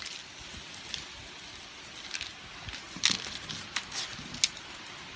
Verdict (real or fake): real